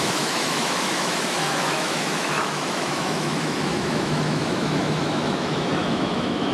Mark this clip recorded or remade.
remade